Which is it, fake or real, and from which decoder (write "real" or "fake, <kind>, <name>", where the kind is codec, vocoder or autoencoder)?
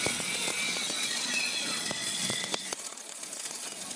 fake, vocoder, Vocos